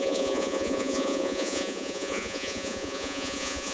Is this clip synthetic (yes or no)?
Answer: yes